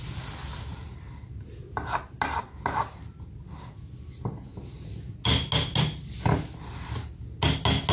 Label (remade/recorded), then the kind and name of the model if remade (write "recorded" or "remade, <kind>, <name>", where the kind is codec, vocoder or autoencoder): recorded